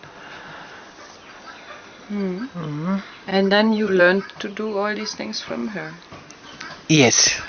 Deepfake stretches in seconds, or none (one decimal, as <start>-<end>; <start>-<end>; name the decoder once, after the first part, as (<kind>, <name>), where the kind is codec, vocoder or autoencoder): 3.3-4.0 (vocoder, HiFi-GAN)